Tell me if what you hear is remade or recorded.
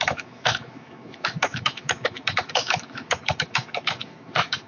remade